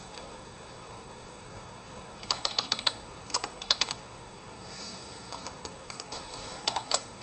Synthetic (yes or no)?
yes